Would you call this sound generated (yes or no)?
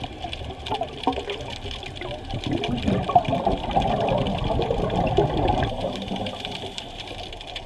no